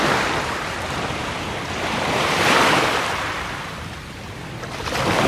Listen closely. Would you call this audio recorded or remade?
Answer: remade